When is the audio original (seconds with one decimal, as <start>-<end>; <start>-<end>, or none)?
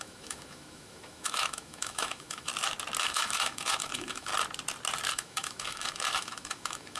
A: 2.5-3.0; 4.3-5.1